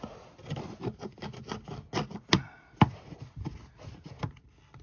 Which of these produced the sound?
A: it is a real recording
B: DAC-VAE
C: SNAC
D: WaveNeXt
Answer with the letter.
A